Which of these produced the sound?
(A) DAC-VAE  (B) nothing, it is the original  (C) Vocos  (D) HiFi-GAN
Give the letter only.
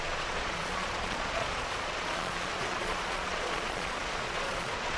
C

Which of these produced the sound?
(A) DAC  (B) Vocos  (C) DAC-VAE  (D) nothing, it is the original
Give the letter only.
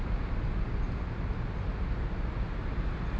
D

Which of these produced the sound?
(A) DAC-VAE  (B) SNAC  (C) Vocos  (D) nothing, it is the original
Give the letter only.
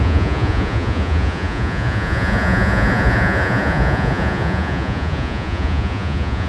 C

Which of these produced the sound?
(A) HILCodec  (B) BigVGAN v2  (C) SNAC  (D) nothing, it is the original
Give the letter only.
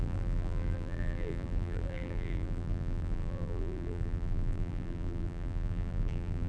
B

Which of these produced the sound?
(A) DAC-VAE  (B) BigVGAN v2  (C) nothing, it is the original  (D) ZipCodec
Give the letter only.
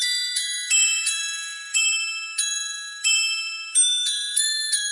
A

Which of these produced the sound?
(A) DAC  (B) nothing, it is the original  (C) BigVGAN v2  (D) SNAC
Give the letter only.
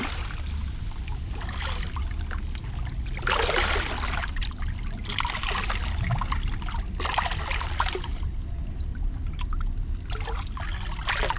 B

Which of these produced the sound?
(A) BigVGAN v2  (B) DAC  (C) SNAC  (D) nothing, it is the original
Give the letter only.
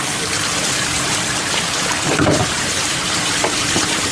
A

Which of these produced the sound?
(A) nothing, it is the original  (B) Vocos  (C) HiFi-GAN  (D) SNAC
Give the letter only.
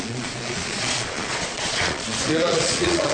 B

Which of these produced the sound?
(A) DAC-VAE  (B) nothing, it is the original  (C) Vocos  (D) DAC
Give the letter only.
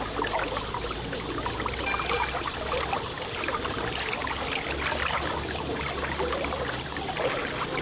B